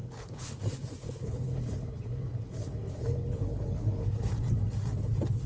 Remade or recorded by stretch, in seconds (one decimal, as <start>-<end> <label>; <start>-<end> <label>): 0.0-0.6 remade; 0.6-1.0 recorded; 1.0-4.3 remade; 4.3-5.5 recorded

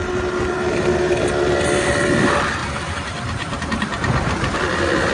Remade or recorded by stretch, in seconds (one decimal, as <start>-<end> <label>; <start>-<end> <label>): 0.0-2.6 recorded; 2.6-4.6 remade; 4.6-5.1 recorded